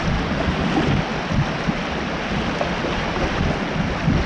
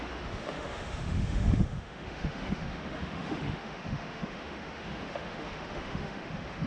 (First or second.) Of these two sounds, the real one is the first